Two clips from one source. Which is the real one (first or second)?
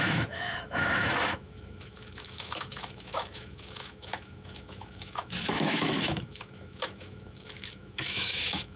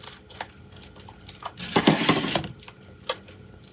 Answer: second